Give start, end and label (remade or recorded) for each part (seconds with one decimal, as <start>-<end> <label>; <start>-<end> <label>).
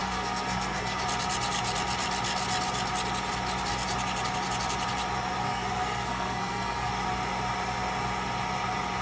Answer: 0.0-1.0 remade; 1.0-5.4 recorded; 5.4-6.9 remade; 6.9-9.0 recorded